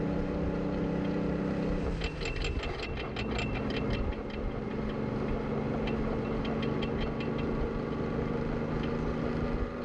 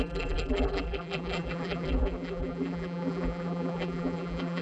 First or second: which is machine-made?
second